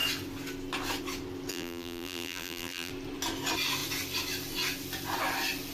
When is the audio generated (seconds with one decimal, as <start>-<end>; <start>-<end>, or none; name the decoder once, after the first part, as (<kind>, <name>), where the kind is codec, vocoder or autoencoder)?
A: 1.5-2.9 (vocoder, BigVGAN v2)